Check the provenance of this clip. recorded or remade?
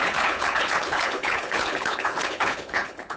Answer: remade